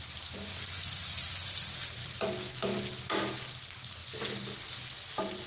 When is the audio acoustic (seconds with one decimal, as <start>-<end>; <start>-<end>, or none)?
0.0-5.5